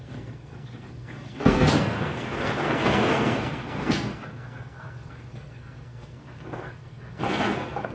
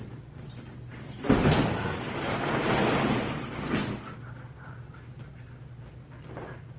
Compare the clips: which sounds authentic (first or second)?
second